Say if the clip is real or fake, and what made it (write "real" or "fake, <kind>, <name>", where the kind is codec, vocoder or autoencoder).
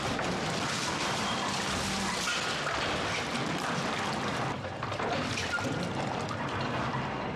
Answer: real